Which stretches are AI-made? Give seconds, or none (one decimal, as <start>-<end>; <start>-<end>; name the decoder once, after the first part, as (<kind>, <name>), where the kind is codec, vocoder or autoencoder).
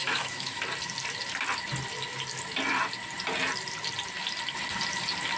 0.0-0.6 (autoencoder, DAC-VAE)